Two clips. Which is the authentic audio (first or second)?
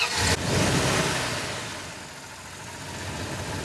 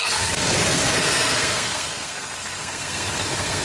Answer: first